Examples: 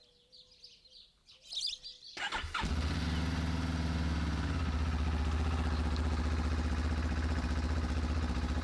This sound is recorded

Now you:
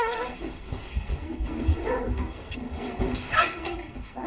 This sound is remade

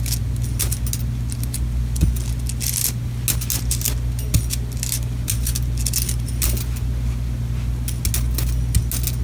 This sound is recorded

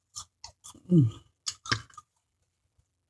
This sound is recorded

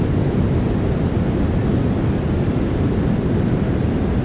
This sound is recorded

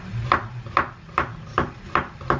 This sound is recorded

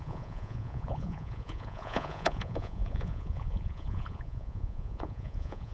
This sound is remade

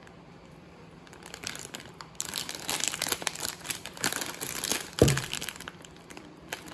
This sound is remade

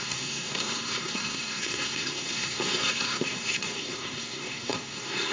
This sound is remade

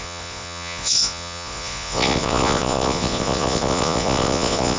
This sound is remade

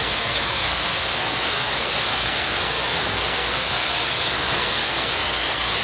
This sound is remade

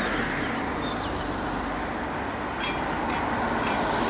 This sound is recorded